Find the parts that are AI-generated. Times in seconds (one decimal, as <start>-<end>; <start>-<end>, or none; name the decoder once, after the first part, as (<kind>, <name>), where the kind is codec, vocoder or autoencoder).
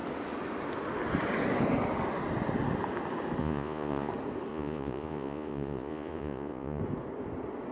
3.4-4.1 (vocoder, Vocos); 4.5-6.8